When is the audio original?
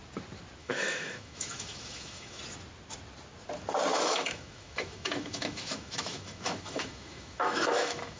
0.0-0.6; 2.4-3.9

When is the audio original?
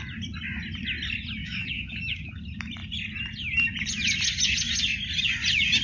0.0-1.4; 2.3-5.8